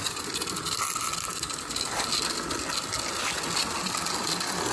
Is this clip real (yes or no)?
yes